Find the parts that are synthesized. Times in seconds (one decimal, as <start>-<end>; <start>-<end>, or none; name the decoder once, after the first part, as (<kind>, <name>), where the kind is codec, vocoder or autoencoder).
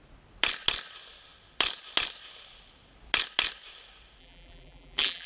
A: 4.2-5.3 (vocoder, BigVGAN v2)